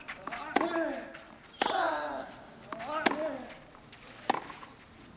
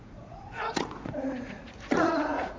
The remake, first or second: second